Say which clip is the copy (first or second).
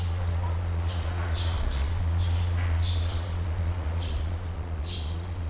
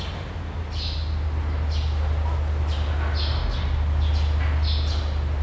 first